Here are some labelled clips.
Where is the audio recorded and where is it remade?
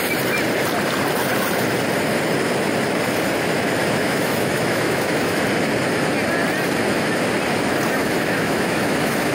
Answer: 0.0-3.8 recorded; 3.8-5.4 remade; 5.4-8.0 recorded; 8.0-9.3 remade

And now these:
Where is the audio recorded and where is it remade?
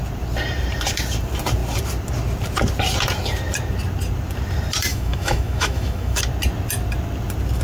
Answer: 0.0-4.9 recorded; 4.9-6.2 remade; 6.2-7.6 recorded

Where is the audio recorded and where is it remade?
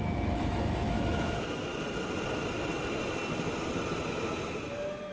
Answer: 0.0-1.7 remade; 1.7-5.1 recorded